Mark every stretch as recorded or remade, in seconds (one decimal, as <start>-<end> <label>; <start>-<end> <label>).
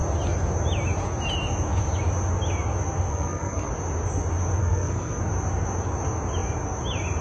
0.0-3.1 recorded; 3.1-3.7 remade; 3.7-4.6 recorded; 4.6-5.2 remade; 5.2-7.2 recorded